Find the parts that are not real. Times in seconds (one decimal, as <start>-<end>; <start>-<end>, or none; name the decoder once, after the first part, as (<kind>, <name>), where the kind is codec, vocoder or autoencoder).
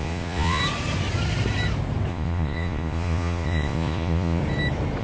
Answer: 0.0-0.6 (vocoder, Vocos); 2.1-4.4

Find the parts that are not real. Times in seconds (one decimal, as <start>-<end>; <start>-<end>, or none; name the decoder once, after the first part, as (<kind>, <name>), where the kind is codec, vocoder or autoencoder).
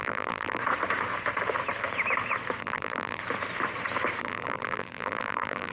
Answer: 0.0-0.6 (vocoder, BigVGAN v2); 2.6-3.2; 4.2-5.7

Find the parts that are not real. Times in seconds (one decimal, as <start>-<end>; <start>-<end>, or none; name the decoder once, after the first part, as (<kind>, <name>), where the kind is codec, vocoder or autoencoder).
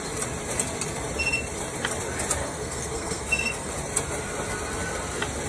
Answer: 2.4-3.7 (codec, SNAC)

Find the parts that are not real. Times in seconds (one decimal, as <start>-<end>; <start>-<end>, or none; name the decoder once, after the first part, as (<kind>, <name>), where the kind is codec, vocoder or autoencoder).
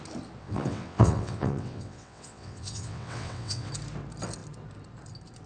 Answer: 0.4-3.7 (vocoder, WaveNeXt)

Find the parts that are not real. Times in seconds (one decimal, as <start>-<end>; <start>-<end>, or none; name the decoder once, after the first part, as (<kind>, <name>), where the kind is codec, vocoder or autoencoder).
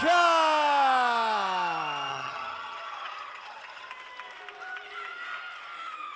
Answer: 2.1-3.9 (vocoder, HiFi-GAN)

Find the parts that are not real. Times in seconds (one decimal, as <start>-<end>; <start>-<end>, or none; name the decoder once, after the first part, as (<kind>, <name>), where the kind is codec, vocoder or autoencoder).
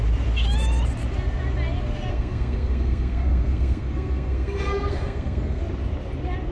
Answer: 2.1-5.6 (codec, SNAC)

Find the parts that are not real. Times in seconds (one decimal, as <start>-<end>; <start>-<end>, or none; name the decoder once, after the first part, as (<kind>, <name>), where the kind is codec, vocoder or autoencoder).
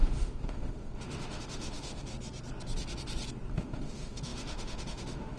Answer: 0.0-2.1 (autoencoder, DAC-VAE); 3.5-5.4